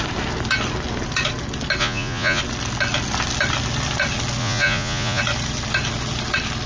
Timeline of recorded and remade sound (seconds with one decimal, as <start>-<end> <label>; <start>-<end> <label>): 0.0-1.8 recorded; 1.8-2.4 remade; 2.4-4.4 recorded; 4.4-5.2 remade; 5.2-6.7 recorded